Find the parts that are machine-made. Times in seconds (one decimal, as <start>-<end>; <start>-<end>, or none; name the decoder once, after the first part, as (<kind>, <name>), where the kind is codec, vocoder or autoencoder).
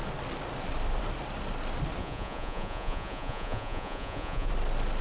2.0-4.5 (vocoder, Vocos)